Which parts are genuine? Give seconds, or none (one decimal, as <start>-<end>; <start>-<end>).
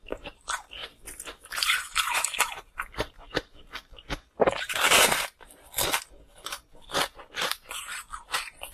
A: 0.8-1.6